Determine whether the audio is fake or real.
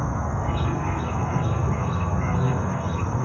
fake